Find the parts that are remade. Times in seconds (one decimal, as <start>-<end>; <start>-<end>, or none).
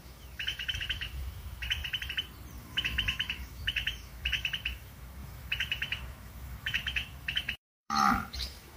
0.0-1.8; 2.6-8.8